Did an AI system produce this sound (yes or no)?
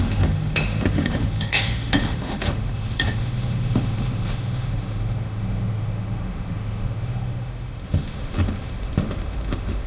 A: yes